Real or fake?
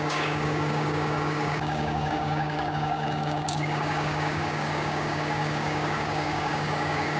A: fake